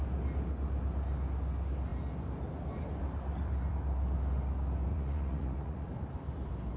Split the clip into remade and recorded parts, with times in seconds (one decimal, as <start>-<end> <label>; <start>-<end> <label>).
0.0-4.9 recorded; 4.9-5.9 remade; 5.9-6.8 recorded